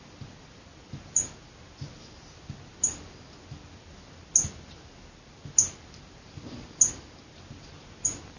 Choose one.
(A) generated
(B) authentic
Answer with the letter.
B